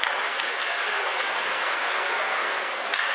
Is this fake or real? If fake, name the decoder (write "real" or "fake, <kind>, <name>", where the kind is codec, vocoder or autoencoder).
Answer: fake, codec, SNAC